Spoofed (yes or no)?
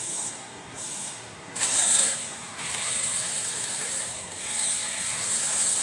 yes